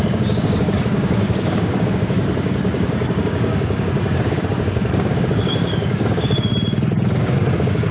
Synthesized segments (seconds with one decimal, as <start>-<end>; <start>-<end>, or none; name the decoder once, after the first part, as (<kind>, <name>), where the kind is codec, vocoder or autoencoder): 0.0-6.5 (codec, DAC); 7.2-7.9